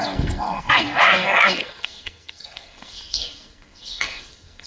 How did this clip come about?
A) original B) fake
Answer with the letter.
B